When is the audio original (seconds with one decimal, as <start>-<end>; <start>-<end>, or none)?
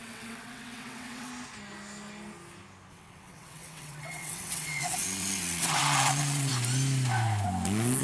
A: 1.3-2.9; 6.5-8.0